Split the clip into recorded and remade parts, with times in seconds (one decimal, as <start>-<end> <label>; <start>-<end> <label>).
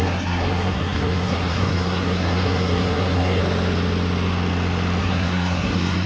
0.0-3.4 remade; 3.4-5.0 recorded; 5.0-6.1 remade